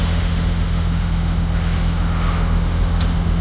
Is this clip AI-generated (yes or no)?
yes